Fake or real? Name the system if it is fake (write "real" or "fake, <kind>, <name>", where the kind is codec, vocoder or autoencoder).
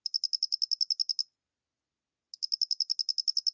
real